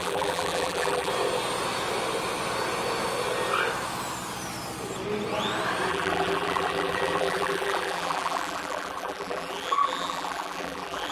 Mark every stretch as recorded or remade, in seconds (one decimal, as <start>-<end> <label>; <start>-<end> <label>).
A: 0.0-1.1 remade; 1.1-5.9 recorded; 5.9-11.1 remade